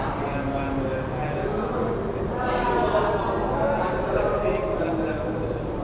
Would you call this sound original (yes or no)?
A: yes